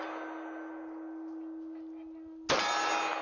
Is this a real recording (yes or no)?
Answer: yes